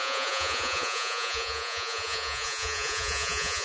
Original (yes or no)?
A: no